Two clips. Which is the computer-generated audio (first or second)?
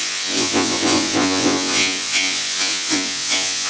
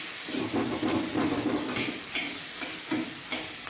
first